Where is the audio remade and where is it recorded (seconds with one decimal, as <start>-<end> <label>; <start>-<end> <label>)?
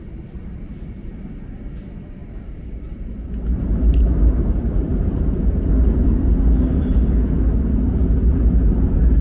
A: 0.0-2.2 recorded; 2.2-2.8 remade; 2.8-3.5 recorded; 3.5-5.2 remade; 5.2-9.2 recorded